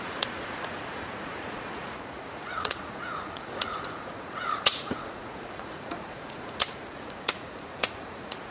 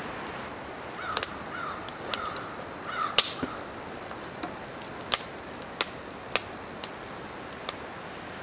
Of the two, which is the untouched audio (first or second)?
second